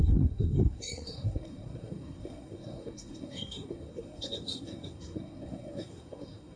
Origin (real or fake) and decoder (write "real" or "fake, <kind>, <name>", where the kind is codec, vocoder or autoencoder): fake, codec, SNAC